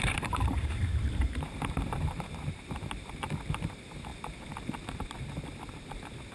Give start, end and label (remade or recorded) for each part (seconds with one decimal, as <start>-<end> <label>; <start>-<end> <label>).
0.0-4.1 remade; 4.1-5.0 recorded; 5.0-6.3 remade